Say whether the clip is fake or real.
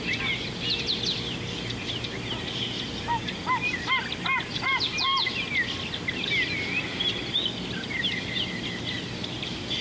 real